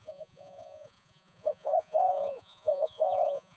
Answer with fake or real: fake